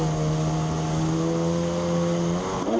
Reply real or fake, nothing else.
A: real